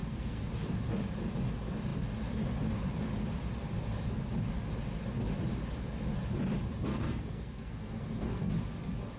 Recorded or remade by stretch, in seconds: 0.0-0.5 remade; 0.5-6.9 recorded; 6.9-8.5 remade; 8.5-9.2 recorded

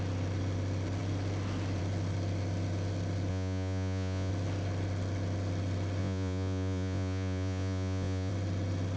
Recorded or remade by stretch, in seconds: 0.0-3.3 recorded; 3.3-4.3 remade; 4.3-6.0 recorded; 6.0-8.3 remade; 8.3-9.0 recorded

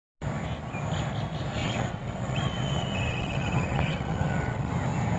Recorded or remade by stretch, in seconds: 0.0-1.6 recorded; 1.6-4.7 remade; 4.7-5.2 recorded